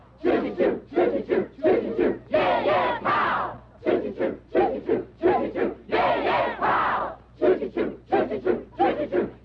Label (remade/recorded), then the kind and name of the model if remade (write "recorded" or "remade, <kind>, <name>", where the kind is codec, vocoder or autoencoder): recorded